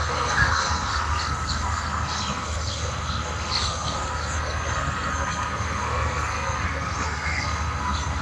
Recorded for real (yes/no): no